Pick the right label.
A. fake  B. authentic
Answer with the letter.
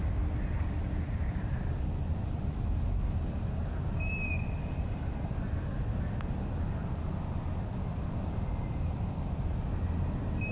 B